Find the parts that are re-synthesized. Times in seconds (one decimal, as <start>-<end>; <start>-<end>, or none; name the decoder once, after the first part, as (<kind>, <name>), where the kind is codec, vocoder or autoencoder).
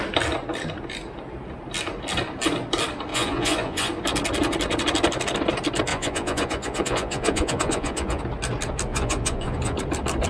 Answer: 3.1-3.9 (vocoder, Vocos); 5.9-8.2; 8.9-9.8